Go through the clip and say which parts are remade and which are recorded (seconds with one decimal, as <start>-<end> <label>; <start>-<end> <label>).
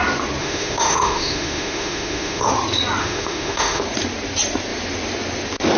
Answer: 0.0-0.4 recorded; 0.4-2.5 remade; 2.5-3.0 recorded; 3.0-3.8 remade; 3.8-5.8 recorded